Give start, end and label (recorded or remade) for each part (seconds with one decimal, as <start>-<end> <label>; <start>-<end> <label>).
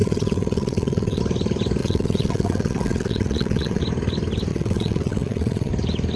0.0-1.2 remade; 1.2-1.8 recorded; 1.8-3.8 remade; 3.8-4.5 recorded; 4.5-5.7 remade; 5.7-6.2 recorded